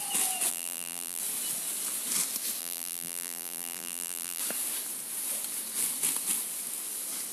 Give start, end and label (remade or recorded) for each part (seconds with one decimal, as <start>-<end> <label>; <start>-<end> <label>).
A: 0.0-0.5 recorded; 0.5-1.2 remade; 1.2-2.6 recorded; 2.6-4.4 remade; 4.4-7.3 recorded